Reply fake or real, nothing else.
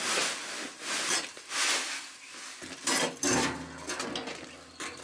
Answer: real